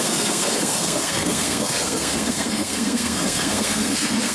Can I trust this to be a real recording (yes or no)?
no